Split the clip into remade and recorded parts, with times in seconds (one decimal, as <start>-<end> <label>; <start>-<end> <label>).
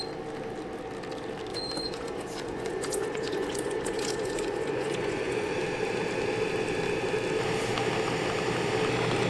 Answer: 0.0-1.5 recorded; 1.5-5.5 remade; 5.5-9.3 recorded